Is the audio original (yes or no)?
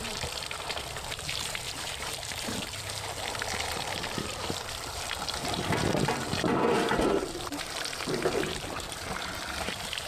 no